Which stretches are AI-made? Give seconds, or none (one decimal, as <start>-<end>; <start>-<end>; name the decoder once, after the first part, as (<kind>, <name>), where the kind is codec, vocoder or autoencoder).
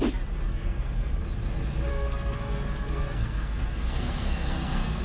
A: 0.5-1.2 (codec, SNAC); 1.9-5.0